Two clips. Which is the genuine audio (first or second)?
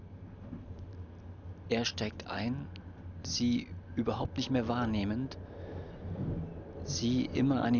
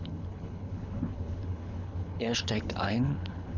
first